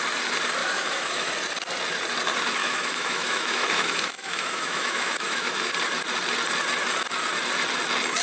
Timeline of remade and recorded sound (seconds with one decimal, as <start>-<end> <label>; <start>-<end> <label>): 0.0-0.6 recorded; 0.6-1.3 remade; 1.3-2.6 recorded; 2.6-5.7 remade; 5.7-8.2 recorded